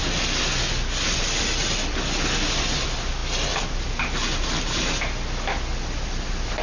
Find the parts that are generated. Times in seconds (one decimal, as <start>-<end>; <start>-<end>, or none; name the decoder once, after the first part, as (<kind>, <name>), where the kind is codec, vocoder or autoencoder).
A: none